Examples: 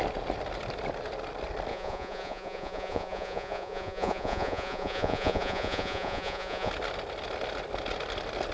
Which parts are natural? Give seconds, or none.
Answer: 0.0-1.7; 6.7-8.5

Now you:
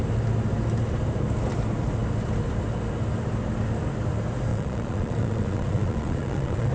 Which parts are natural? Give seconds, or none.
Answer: 0.0-4.5

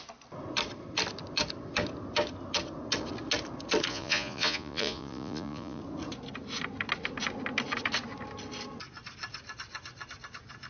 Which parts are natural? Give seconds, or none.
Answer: 0.0-3.9; 5.8-10.7

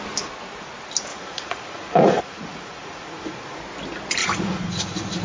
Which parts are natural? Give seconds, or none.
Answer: 0.0-1.1; 3.6-4.2

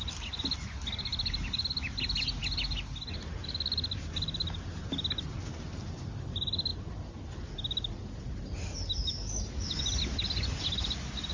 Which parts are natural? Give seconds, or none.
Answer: 0.0-11.3

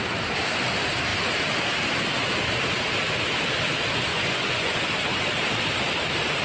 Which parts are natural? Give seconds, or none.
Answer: 0.0-4.1; 4.8-6.4

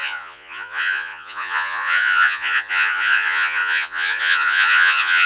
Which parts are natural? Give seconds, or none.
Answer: none

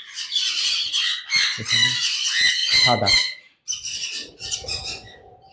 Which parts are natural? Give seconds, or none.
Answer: 0.0-5.5